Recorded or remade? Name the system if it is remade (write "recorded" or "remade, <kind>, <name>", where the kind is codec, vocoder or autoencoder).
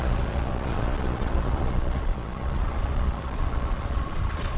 remade, vocoder, Vocos